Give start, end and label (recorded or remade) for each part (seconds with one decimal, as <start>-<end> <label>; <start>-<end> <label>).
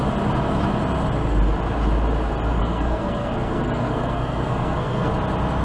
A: 0.0-2.6 recorded; 2.6-5.1 remade; 5.1-5.6 recorded